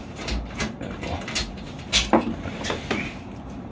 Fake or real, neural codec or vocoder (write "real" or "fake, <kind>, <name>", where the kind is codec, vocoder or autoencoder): fake, vocoder, BigVGAN v2